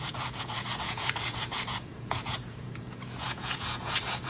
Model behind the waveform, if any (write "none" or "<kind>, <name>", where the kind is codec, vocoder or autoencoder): vocoder, Vocos